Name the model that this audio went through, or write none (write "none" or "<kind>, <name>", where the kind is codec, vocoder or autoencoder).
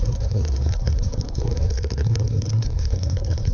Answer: codec, SNAC